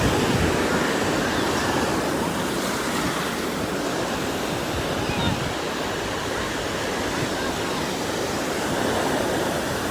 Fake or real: real